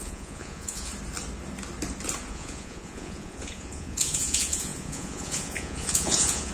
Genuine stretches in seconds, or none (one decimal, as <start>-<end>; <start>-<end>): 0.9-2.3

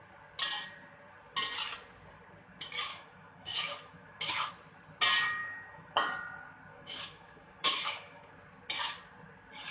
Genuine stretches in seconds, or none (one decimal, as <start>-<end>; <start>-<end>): 0.0-2.9; 4.5-5.4; 6.1-6.7; 8.3-9.7

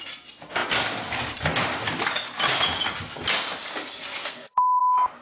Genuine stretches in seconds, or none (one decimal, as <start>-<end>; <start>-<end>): 0.0-4.2; 4.8-5.2

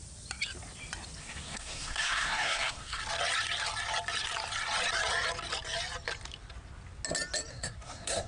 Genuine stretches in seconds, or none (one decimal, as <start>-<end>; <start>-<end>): 0.0-1.2; 3.0-7.5

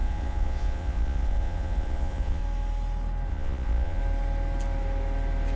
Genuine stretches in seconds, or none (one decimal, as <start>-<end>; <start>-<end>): 2.4-3.3; 4.0-5.6

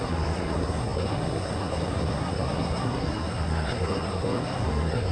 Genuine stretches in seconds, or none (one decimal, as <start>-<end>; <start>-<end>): none

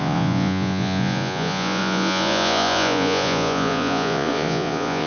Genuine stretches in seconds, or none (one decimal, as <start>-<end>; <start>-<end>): none

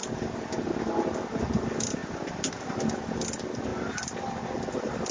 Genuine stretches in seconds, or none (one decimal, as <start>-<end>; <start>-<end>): 0.0-5.1